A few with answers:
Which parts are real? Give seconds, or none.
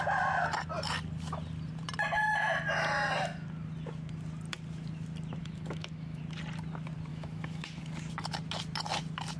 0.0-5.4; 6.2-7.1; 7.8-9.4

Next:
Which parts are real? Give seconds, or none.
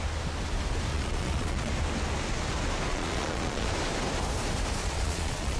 0.0-0.9; 1.7-2.9; 3.7-4.8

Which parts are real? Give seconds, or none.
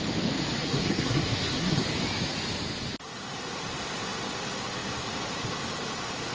0.0-0.6; 1.8-6.3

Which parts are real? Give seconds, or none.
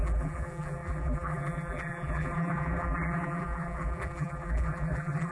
none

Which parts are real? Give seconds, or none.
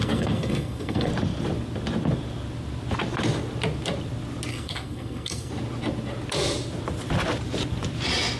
1.1-4.5; 5.5-8.4